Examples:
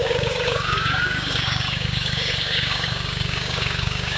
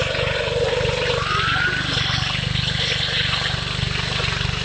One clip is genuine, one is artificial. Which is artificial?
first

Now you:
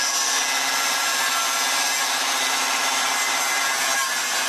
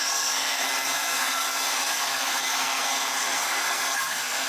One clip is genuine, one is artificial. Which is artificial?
second